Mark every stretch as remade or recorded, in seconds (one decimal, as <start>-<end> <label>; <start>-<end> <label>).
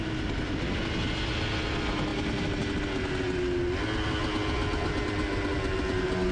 0.0-6.3 recorded